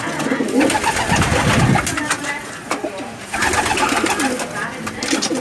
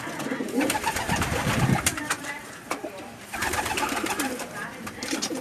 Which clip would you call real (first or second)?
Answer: first